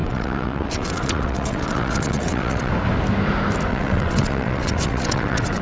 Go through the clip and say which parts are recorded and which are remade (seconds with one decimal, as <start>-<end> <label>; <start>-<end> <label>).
0.0-2.7 remade; 2.7-3.7 recorded; 3.7-5.6 remade